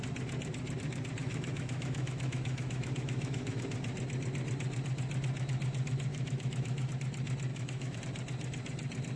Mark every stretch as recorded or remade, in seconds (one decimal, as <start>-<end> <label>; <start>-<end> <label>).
0.0-1.2 recorded; 1.2-3.6 remade; 3.6-6.1 recorded; 6.1-6.9 remade; 6.9-7.5 recorded; 7.5-8.0 remade; 8.0-9.2 recorded